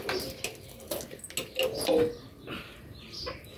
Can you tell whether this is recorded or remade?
recorded